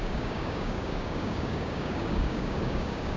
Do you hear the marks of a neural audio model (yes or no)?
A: yes